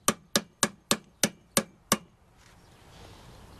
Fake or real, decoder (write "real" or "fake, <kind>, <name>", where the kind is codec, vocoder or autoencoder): real